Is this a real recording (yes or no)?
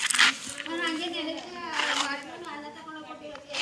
yes